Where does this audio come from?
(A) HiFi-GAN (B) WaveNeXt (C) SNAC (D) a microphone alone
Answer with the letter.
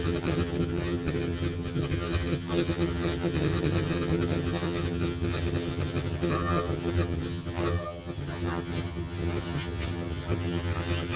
A